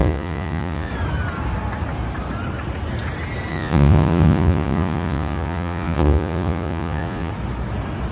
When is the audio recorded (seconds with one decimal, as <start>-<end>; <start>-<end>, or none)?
0.9-3.5; 7.3-8.1